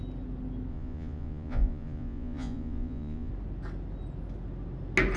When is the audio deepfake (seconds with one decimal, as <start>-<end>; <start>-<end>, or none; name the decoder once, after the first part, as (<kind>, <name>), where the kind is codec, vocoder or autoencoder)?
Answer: 0.7-3.3 (vocoder, Vocos)